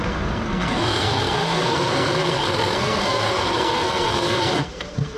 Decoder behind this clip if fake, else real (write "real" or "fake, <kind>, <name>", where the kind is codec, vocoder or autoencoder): fake, codec, SNAC